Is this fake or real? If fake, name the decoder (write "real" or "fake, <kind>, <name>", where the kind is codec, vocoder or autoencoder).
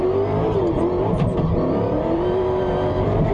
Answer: fake, vocoder, BigVGAN v2